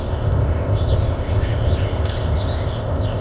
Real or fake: fake